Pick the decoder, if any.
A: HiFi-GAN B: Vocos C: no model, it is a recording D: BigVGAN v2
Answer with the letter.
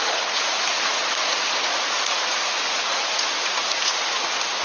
B